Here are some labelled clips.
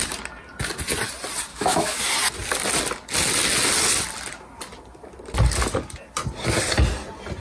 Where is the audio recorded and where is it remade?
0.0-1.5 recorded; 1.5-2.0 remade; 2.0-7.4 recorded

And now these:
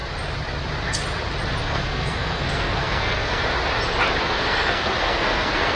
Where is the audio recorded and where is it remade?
0.0-1.6 recorded; 1.6-3.4 remade; 3.4-4.2 recorded; 4.2-5.8 remade

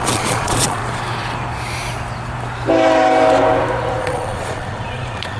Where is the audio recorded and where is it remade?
0.0-0.8 remade; 0.8-4.0 recorded; 4.0-5.4 remade

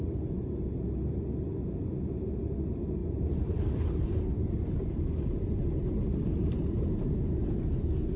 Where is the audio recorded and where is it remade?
0.0-3.0 recorded; 3.0-7.6 remade; 7.6-8.2 recorded